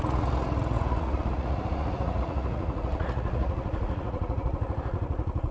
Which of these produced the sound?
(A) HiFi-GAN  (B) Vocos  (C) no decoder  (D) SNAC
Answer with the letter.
B